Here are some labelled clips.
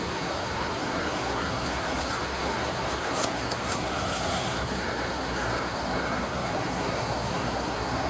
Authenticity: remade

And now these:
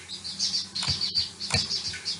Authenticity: recorded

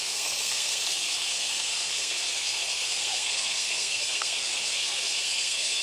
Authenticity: remade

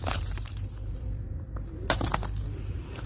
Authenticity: remade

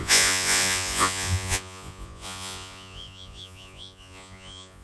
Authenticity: remade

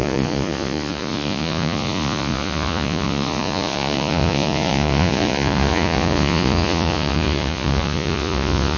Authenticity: remade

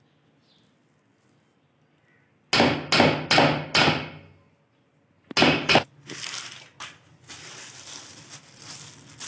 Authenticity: recorded